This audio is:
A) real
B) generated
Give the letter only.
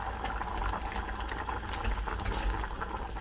A